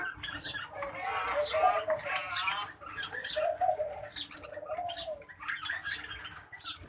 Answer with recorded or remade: recorded